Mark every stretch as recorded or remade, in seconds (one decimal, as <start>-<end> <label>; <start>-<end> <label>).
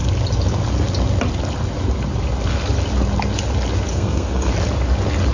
0.0-3.9 recorded; 3.9-4.5 remade; 4.5-5.3 recorded